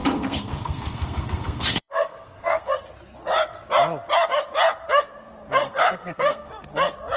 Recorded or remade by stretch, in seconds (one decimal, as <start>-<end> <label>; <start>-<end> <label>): 0.0-2.8 remade; 2.8-5.6 recorded; 5.6-6.5 remade; 6.5-7.2 recorded